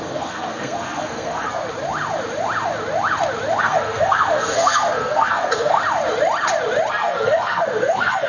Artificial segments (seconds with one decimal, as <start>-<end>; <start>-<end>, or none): 0.0-1.6; 3.6-5.8; 6.9-8.3

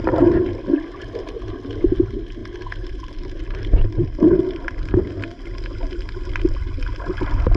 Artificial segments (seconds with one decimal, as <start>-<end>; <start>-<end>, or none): none

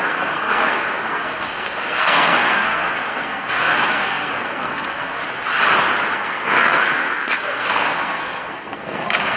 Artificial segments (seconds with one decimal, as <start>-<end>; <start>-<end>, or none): 0.0-5.2; 6.1-9.4

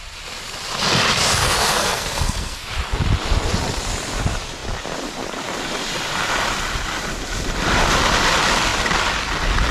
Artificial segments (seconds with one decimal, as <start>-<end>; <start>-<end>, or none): 1.4-2.7